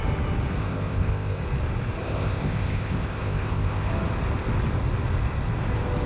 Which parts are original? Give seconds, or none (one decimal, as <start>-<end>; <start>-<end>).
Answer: 0.0-0.6; 1.4-2.0; 3.9-6.1